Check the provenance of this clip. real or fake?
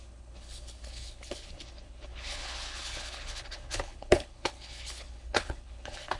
fake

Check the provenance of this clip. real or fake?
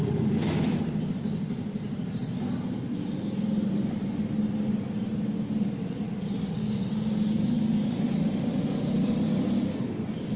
real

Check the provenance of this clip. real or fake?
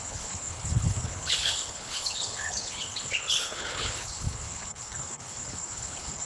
fake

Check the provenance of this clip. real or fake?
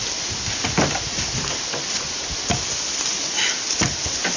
real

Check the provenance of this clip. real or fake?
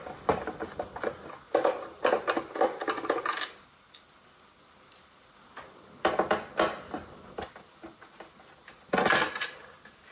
real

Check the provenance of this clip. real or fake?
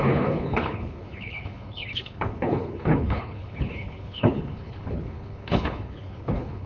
fake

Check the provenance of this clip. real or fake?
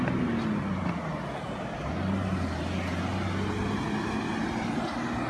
real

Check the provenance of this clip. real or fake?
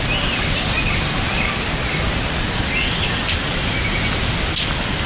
real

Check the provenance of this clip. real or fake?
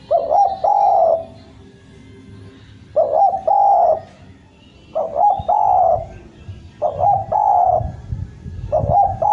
real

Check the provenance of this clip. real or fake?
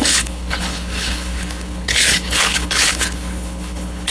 fake